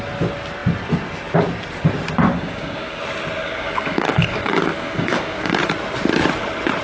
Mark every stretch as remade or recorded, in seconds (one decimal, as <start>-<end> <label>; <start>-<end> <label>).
0.0-2.3 recorded; 2.3-3.0 remade; 3.0-3.4 recorded; 3.4-5.6 remade; 5.6-6.8 recorded